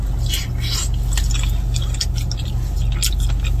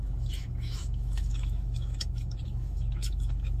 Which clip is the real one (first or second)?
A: first